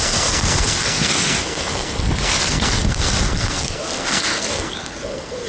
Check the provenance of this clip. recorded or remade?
remade